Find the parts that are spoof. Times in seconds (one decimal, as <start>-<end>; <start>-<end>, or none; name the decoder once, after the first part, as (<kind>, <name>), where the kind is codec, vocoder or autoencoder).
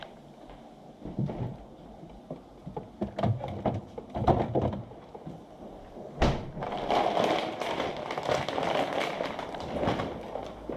none